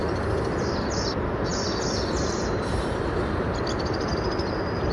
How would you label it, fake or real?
real